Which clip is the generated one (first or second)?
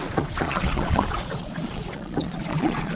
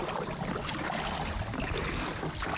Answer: first